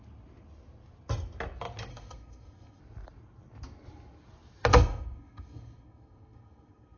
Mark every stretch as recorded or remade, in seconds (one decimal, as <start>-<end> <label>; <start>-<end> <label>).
0.0-1.9 recorded; 1.9-2.8 remade; 2.8-4.7 recorded; 4.7-7.0 remade